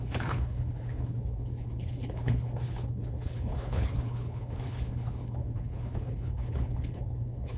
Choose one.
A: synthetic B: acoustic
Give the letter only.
A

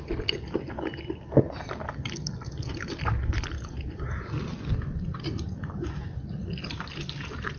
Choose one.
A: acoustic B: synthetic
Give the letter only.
A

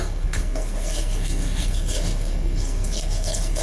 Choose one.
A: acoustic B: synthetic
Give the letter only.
B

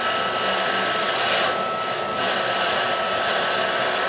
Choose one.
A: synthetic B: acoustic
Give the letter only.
B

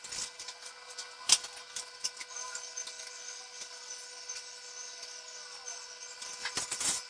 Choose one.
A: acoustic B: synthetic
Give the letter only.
A